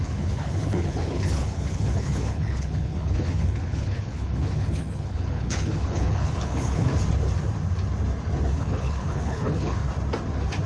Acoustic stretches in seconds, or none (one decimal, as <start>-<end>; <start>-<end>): 6.9-8.6; 9.8-10.7